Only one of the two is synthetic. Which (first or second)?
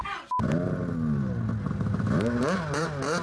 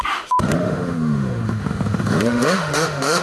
second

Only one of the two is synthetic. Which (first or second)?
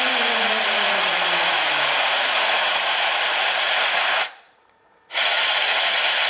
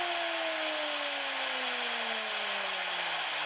first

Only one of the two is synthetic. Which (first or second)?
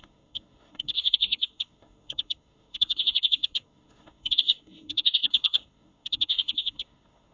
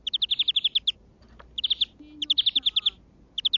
first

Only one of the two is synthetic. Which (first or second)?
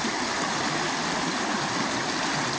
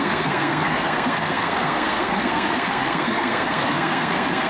second